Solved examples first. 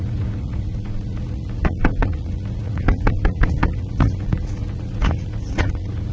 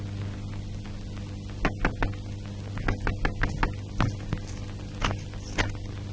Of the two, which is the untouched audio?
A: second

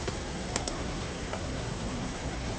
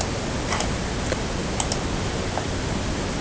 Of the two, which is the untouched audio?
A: second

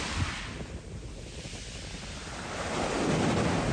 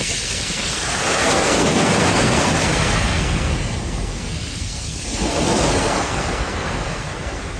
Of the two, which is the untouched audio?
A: first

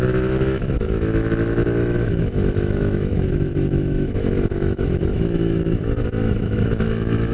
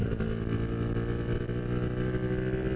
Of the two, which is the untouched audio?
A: second